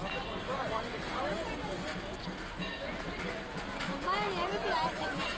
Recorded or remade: recorded